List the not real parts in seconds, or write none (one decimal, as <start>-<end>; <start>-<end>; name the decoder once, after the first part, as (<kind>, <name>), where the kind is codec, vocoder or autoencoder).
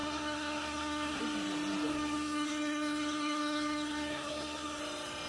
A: 0.0-1.2 (codec, SNAC); 1.9-4.8